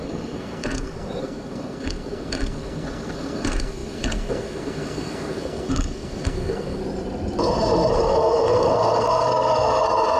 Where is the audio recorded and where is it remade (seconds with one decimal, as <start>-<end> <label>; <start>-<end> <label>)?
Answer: 0.0-6.8 remade; 6.8-7.9 recorded; 7.9-10.2 remade